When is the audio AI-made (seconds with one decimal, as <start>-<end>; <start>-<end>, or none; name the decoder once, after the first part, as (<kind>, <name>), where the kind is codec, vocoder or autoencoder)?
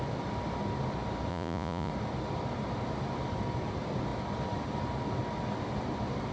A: 1.3-1.9 (vocoder, Vocos)